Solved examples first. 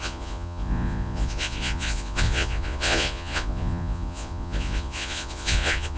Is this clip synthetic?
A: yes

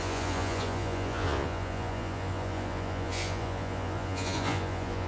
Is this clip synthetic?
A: yes